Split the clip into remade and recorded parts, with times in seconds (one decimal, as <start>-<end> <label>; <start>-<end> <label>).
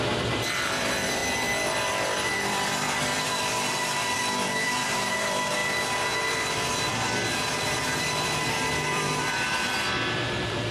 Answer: 0.0-1.2 remade; 1.2-1.9 recorded; 1.9-5.6 remade; 5.6-6.2 recorded; 6.2-10.7 remade